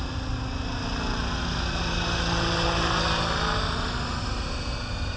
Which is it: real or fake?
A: real